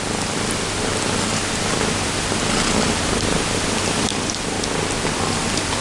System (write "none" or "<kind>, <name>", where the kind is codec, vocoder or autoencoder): none